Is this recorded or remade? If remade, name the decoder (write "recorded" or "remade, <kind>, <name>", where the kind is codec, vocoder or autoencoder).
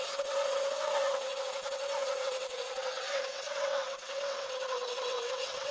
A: remade, vocoder, WaveNeXt